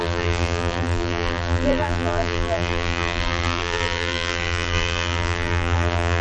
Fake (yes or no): yes